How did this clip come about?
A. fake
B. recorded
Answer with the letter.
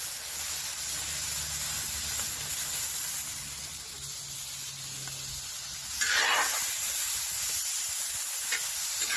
B